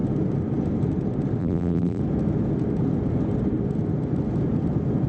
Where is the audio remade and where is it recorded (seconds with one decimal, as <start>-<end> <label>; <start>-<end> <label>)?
0.0-1.4 recorded; 1.4-2.0 remade; 2.0-5.1 recorded